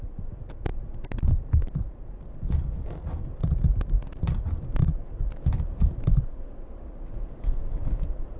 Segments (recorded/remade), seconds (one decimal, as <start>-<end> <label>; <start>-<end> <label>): 0.0-0.7 recorded; 0.7-2.1 remade; 2.1-4.8 recorded; 4.8-7.9 remade; 7.9-8.4 recorded